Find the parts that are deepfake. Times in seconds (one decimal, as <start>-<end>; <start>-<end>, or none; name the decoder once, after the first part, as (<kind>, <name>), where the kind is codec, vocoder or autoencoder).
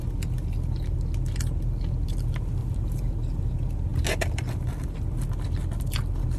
2.6-3.4 (vocoder, BigVGAN v2)